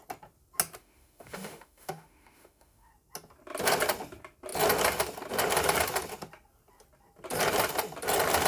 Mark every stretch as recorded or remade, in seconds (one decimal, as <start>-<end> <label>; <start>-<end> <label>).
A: 0.0-0.8 recorded; 0.8-2.9 remade; 2.9-8.5 recorded